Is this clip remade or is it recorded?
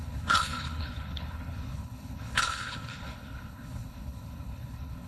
remade